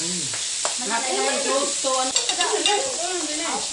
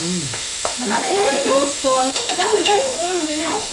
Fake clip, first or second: second